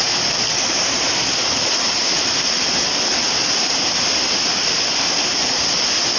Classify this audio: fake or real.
real